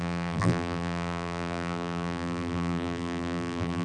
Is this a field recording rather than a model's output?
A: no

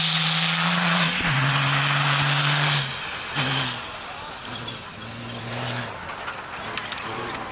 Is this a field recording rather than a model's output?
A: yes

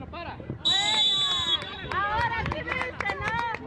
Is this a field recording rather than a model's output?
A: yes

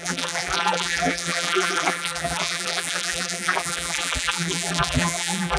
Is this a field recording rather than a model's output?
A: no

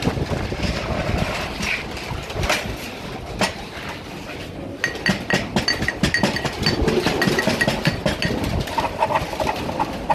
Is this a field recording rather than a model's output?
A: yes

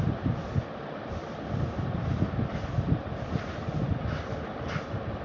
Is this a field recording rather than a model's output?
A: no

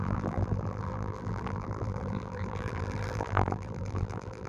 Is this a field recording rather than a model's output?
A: no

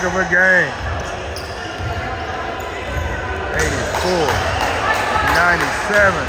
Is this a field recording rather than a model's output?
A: yes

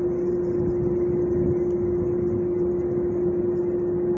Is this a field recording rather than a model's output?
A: yes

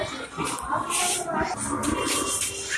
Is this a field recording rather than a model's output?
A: yes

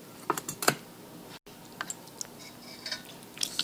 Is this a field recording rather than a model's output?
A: yes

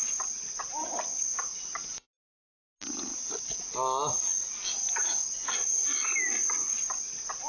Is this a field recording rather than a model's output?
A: yes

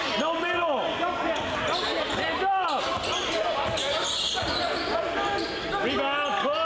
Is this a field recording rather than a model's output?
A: yes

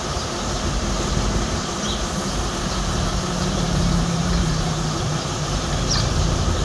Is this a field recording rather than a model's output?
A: no